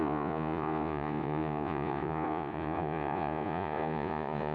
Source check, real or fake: fake